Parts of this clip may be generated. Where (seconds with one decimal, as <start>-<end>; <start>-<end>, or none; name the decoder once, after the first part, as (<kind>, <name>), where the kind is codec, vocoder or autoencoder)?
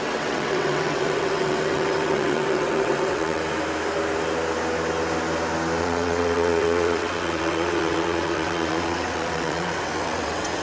0.0-3.4 (vocoder, WaveNeXt); 5.8-10.6